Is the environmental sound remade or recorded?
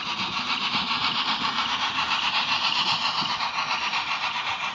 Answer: remade